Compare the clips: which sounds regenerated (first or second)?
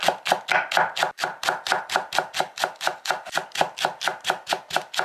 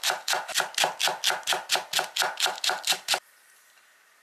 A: first